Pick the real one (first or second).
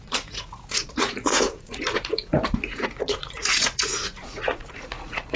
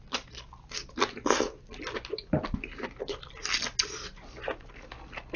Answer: second